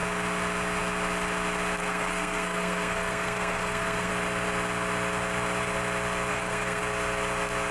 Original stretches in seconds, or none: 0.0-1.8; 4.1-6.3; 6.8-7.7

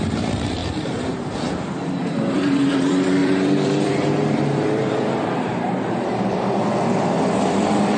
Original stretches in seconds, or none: none